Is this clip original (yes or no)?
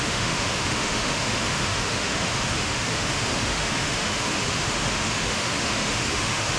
no